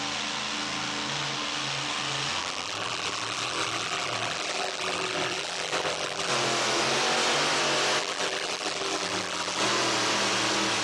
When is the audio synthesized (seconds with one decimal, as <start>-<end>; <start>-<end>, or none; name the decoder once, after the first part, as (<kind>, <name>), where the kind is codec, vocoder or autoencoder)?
2.4-6.3 (vocoder, BigVGAN v2); 8.0-9.6